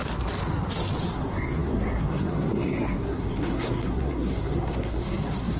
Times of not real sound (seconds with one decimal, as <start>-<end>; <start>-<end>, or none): 1.1-5.6